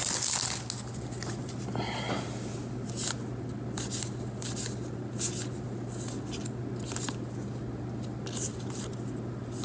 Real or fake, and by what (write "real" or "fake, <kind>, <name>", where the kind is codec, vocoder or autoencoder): real